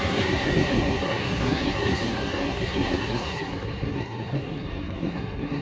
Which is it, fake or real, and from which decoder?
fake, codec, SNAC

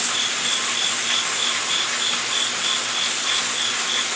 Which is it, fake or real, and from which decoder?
real